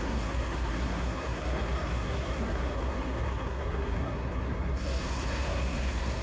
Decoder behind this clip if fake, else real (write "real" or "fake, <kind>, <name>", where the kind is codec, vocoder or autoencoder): fake, codec, SNAC